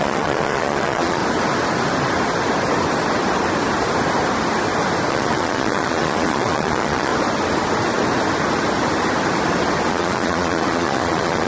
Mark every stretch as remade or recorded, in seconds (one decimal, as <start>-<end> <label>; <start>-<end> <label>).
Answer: 0.0-1.2 remade; 1.2-5.1 recorded; 5.1-7.1 remade; 7.1-9.9 recorded; 9.9-11.5 remade